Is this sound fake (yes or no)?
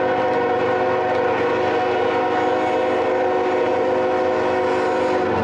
no